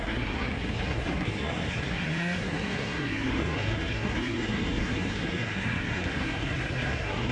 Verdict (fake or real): fake